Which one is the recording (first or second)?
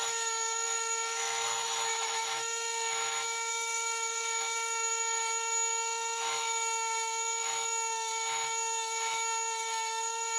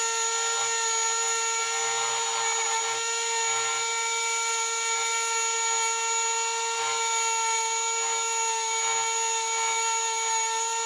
second